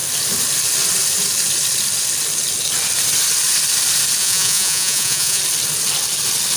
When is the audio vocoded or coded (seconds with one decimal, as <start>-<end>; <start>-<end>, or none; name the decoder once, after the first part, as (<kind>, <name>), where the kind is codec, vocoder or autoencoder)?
4.2-5.4 (vocoder, Vocos)